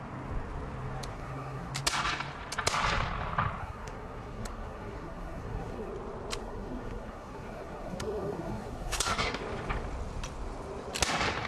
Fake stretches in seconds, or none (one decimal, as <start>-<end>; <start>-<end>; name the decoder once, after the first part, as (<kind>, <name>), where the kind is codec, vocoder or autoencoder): 1.1-1.7 (codec, SNAC); 3.6-5.9; 6.4-9.4